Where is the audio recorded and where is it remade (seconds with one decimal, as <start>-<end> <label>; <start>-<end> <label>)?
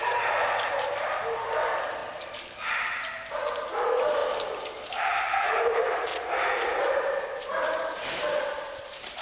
0.0-2.0 remade; 2.0-3.3 recorded; 3.3-9.2 remade